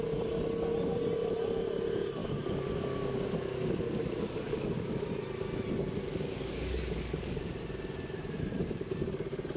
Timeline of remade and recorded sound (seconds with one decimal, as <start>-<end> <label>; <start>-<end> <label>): 0.0-2.2 recorded; 2.2-5.1 remade; 5.1-6.1 recorded; 6.1-7.4 remade; 7.4-9.6 recorded

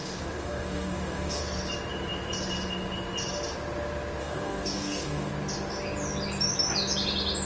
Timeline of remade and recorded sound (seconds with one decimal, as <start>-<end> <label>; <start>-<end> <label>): 0.0-1.4 remade; 1.4-4.2 recorded; 4.2-5.3 remade; 5.3-7.4 recorded

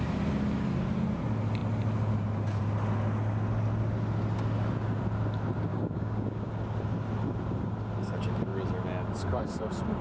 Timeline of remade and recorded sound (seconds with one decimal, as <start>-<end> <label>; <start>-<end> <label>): 0.0-5.7 recorded; 5.7-6.5 remade; 6.5-10.0 recorded

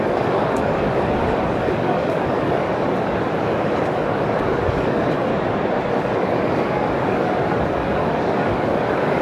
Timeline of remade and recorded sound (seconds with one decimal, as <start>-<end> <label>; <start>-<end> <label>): 0.0-5.3 remade; 5.3-5.9 recorded; 5.9-9.2 remade

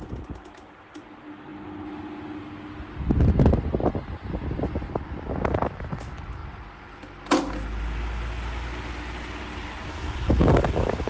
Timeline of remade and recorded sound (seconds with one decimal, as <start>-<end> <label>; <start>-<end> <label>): 0.0-9.9 recorded; 9.9-11.1 remade

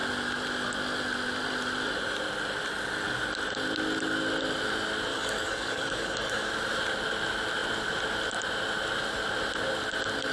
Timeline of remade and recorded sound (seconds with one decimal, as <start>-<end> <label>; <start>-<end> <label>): 0.0-5.1 recorded; 5.1-6.5 remade; 6.5-10.3 recorded